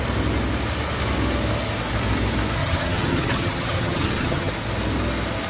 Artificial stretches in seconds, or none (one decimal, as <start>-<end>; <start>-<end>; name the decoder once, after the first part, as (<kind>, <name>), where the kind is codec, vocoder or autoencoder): 2.6-4.5 (vocoder, HiFi-GAN)